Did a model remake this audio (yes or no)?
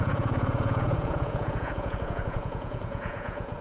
yes